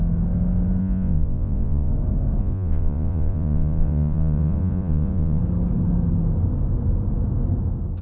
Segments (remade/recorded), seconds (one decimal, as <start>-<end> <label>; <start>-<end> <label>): 0.0-0.8 recorded; 0.8-1.9 remade; 1.9-2.4 recorded; 2.4-5.4 remade; 5.4-8.0 recorded